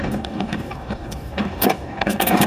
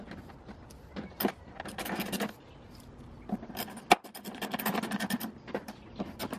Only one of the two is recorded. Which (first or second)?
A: second